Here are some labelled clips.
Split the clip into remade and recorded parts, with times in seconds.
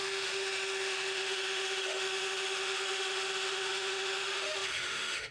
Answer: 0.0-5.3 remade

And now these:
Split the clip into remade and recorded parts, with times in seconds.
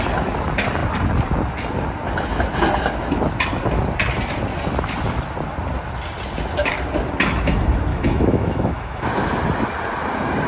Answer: 0.0-7.9 recorded; 7.9-9.1 remade; 9.1-10.5 recorded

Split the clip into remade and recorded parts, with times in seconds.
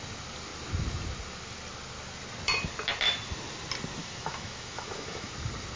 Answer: 0.0-4.0 recorded; 4.0-5.3 remade; 5.3-5.8 recorded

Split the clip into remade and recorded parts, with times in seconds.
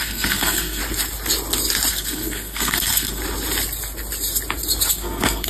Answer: 0.0-0.8 remade; 0.8-1.9 recorded; 1.9-3.2 remade; 3.2-4.9 recorded; 4.9-5.5 remade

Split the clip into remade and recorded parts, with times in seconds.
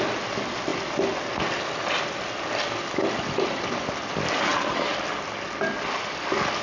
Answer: 0.0-6.6 recorded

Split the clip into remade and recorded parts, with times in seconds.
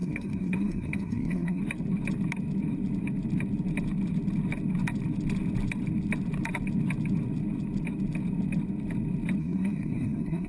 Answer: 0.0-1.6 remade; 1.6-9.4 recorded; 9.4-10.5 remade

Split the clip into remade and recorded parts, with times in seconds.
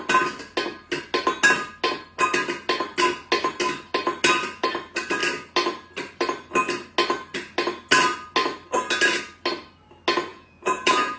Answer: 0.0-10.3 recorded; 10.3-11.2 remade